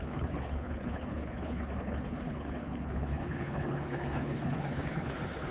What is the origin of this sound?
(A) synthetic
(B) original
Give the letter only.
A